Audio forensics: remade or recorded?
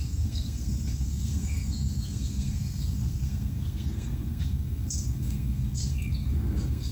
remade